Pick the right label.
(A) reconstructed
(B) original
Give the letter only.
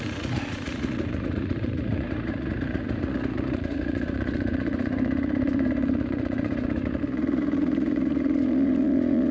A